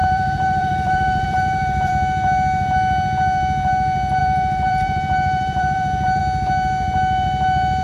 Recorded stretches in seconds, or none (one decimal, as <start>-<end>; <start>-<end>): 1.9-4.2; 6.2-7.8